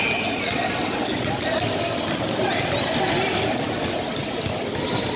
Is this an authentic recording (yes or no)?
yes